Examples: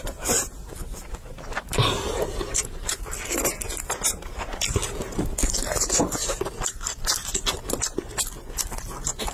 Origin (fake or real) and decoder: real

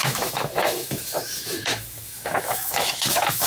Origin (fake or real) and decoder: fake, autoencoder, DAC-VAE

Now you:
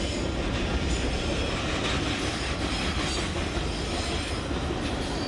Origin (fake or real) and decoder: real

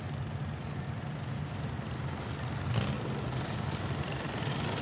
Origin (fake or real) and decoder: real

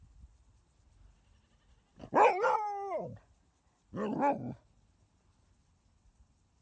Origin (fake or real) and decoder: real